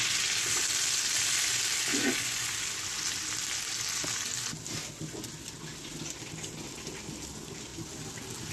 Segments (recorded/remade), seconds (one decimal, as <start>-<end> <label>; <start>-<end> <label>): 0.0-1.9 recorded; 1.9-2.5 remade; 2.5-8.5 recorded